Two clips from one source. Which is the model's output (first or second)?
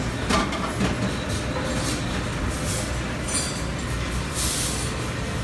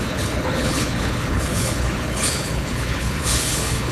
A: second